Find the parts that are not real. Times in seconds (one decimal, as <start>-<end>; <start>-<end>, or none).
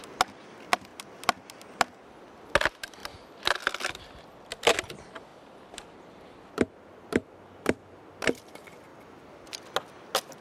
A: none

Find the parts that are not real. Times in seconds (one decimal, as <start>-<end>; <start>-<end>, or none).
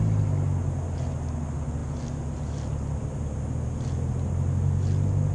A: none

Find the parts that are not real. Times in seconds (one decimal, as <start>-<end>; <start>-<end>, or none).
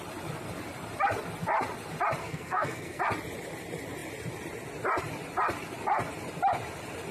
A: 2.2-3.0